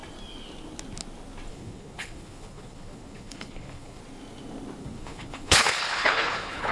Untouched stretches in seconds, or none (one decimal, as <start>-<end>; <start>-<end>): 0.0-1.5; 4.0-4.8